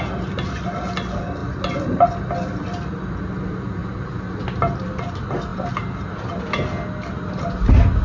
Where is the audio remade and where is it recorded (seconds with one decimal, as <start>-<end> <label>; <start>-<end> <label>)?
0.0-8.0 recorded

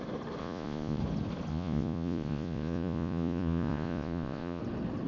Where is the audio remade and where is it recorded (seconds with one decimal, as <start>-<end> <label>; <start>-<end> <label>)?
0.0-0.4 recorded; 0.4-1.0 remade; 1.0-1.5 recorded; 1.5-4.6 remade; 4.6-5.1 recorded

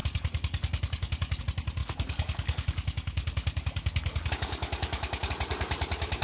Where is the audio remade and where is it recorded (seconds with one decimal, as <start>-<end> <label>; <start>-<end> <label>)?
0.0-1.4 remade; 1.4-1.8 recorded; 1.8-5.3 remade; 5.3-6.2 recorded

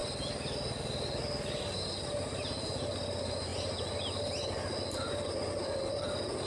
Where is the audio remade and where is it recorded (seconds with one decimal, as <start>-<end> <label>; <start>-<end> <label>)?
0.0-6.5 recorded

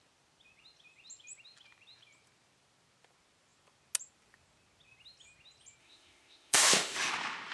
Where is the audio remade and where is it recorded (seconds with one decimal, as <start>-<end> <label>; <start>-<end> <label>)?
0.0-5.8 recorded; 5.8-7.1 remade; 7.1-7.5 recorded

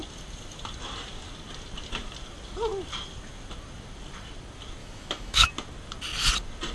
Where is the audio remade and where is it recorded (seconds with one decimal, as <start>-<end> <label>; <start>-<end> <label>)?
0.0-4.8 recorded; 4.8-5.5 remade; 5.5-6.7 recorded